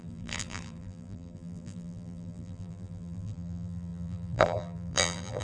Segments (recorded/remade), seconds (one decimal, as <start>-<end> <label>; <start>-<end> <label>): 0.0-5.4 remade